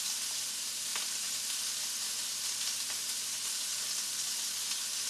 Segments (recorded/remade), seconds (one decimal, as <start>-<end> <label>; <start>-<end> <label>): 0.0-5.1 recorded